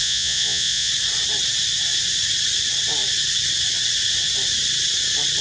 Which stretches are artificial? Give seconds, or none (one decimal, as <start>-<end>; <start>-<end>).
0.0-0.9